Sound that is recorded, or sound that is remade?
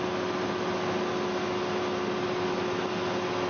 recorded